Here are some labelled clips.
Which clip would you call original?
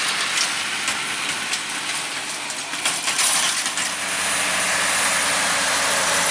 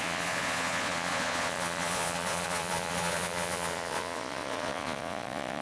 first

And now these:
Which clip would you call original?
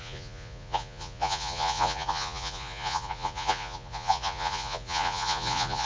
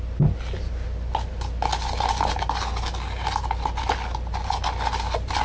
second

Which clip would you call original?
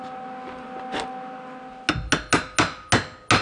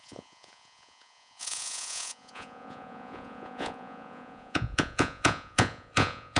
first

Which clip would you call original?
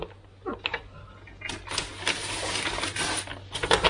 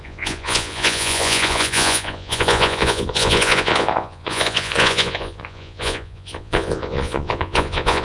first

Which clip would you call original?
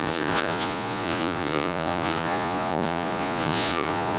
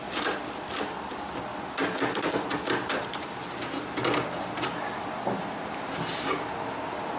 second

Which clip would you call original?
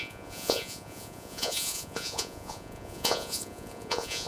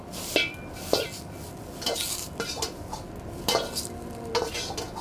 second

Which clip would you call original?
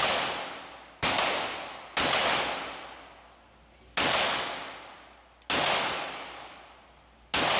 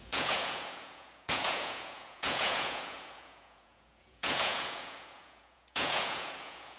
first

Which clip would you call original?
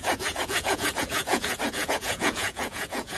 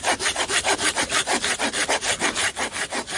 second